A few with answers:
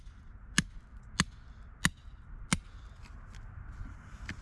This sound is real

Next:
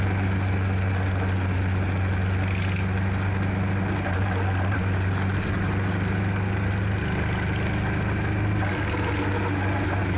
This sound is real